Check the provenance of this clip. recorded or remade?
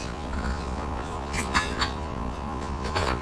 remade